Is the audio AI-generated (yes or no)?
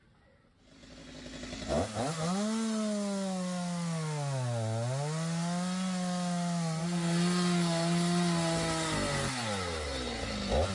no